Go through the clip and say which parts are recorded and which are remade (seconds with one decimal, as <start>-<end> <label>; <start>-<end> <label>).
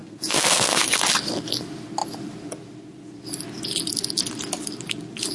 0.0-1.0 remade; 1.0-5.3 recorded